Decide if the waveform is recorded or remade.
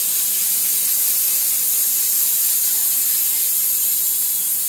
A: recorded